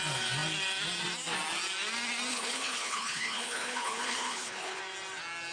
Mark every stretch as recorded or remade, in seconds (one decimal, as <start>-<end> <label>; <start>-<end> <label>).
0.0-2.3 recorded; 2.3-4.8 remade; 4.8-5.5 recorded